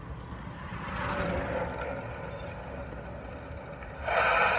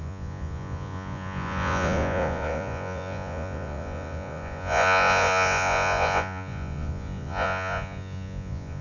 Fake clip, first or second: second